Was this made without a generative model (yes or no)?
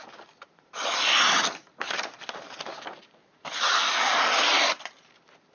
yes